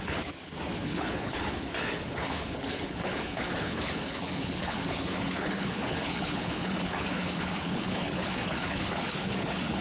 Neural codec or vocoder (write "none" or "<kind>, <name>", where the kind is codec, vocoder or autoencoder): codec, HILCodec